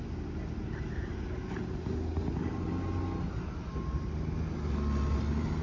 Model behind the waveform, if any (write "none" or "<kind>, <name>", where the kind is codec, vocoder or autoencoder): none